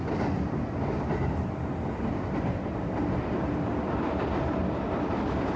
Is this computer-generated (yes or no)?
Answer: no